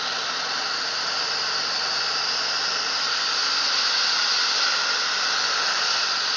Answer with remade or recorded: recorded